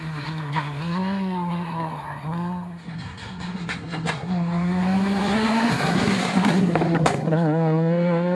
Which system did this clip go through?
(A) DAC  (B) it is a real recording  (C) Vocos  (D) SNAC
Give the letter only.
D